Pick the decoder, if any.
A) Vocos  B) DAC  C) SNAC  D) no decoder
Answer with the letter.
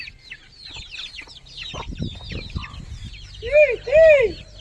D